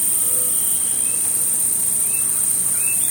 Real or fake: real